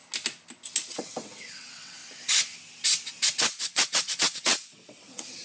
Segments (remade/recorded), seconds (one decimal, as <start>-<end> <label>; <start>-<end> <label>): 0.0-0.9 recorded; 0.9-2.0 remade; 2.0-3.6 recorded; 3.6-5.4 remade